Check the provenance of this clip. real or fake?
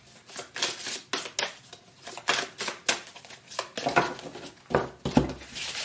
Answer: real